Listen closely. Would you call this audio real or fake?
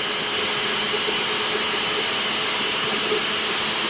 real